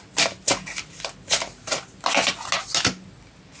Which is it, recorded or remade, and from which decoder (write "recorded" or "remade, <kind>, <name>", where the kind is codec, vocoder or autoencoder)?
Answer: recorded